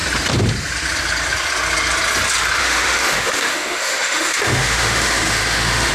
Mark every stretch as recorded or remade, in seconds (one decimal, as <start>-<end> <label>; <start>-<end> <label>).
0.0-2.6 recorded; 2.6-5.9 remade